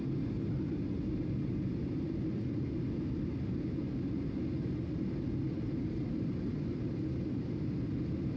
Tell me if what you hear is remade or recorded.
recorded